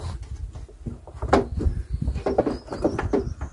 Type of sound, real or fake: real